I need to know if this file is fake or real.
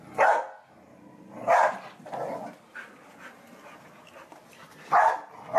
real